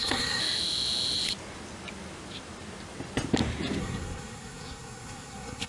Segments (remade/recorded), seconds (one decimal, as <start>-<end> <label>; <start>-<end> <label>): 0.0-0.4 remade; 0.4-3.8 recorded; 3.8-5.7 remade